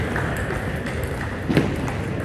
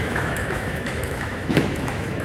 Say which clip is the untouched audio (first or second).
first